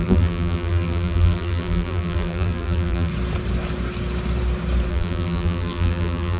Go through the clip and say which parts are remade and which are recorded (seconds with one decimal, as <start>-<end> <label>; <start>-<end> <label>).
0.0-3.1 remade; 3.1-4.9 recorded; 4.9-6.4 remade